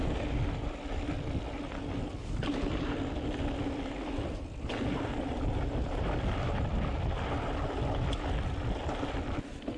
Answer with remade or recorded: recorded